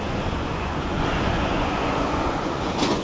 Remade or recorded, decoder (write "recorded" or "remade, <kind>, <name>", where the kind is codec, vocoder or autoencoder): remade, vocoder, Vocos